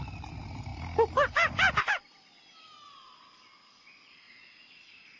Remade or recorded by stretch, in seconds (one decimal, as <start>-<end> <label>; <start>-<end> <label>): 0.0-5.2 recorded